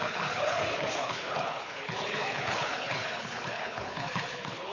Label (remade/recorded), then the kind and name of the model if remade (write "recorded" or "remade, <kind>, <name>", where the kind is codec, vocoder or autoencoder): remade, codec, HILCodec